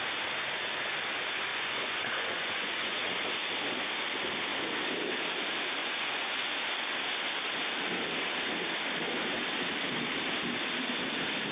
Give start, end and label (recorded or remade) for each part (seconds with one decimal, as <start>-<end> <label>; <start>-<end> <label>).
0.0-1.5 recorded; 1.5-3.2 remade; 3.2-5.8 recorded; 5.8-6.5 remade; 6.5-11.5 recorded